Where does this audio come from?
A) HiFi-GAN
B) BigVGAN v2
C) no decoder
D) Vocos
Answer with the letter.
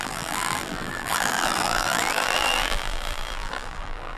B